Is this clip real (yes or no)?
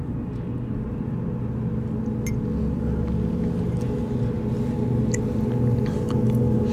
yes